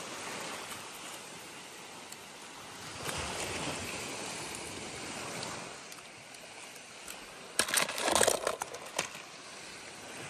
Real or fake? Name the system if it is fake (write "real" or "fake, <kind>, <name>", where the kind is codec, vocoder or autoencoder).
real